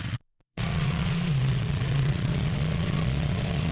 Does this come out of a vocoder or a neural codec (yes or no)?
yes